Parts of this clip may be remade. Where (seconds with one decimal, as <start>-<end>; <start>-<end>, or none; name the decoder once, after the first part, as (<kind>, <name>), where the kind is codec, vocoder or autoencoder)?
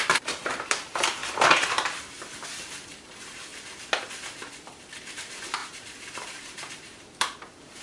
0.0-1.2 (vocoder, BigVGAN v2); 2.0-3.5; 5.1-7.8